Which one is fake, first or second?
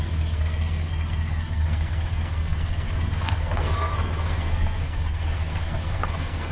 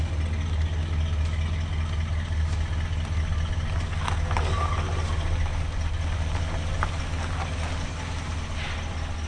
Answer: first